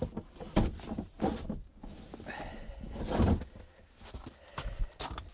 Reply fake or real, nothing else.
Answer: real